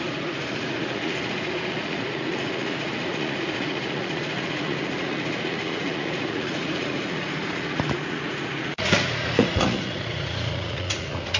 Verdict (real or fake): fake